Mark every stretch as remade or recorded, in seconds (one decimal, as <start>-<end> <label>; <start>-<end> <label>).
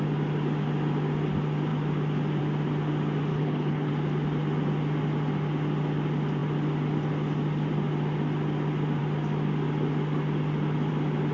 0.0-3.3 recorded; 3.3-3.9 remade; 3.9-11.3 recorded